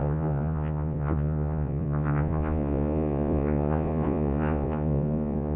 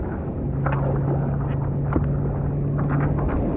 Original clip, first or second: second